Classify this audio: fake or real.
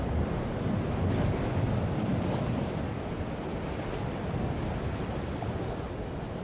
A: real